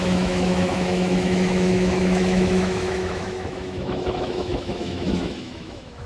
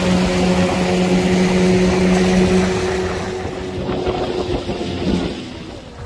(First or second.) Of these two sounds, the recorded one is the second